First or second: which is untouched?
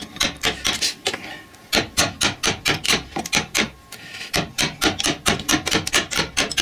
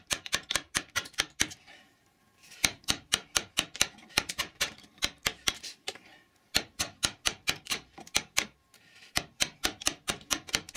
first